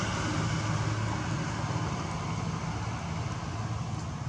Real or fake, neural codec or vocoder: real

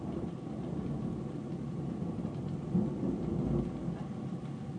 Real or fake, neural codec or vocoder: real